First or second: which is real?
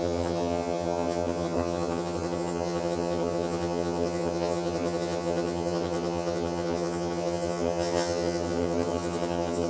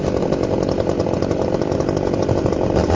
second